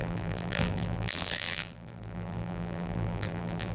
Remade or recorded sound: remade